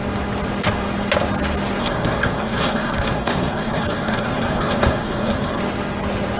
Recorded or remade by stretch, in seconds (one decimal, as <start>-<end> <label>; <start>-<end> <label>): 0.0-1.8 recorded; 1.8-5.6 remade; 5.6-6.4 recorded